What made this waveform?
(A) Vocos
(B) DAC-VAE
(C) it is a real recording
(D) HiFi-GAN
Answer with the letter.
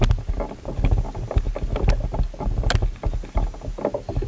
C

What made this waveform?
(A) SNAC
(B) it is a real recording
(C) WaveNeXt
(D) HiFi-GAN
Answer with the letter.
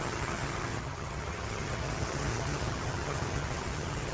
D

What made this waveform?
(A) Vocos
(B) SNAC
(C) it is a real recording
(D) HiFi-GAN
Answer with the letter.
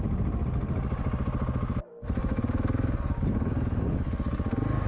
C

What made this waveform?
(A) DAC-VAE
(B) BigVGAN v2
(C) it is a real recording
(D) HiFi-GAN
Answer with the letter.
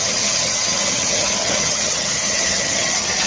D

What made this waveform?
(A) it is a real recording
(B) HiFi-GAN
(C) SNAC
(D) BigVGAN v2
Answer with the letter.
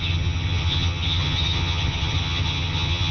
B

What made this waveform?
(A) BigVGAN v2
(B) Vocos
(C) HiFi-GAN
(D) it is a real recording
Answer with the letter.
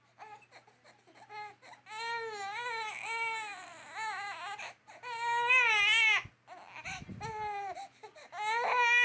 D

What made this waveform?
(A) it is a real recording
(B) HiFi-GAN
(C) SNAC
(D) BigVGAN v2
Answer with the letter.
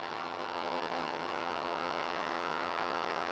B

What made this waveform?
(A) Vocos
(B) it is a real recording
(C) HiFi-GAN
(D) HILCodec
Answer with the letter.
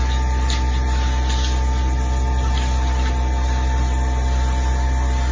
B